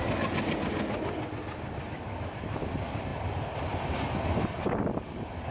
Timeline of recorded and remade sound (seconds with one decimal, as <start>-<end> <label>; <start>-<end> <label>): 0.0-5.5 recorded